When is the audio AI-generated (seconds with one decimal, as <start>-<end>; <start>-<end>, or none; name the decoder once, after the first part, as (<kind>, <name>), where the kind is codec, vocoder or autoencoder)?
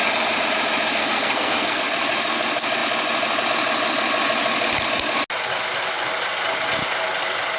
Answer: 0.9-1.8 (codec, SNAC)